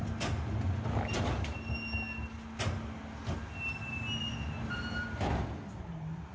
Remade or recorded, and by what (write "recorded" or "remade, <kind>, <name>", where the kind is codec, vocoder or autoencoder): recorded